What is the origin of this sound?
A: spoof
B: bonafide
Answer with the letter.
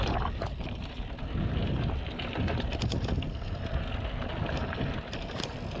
B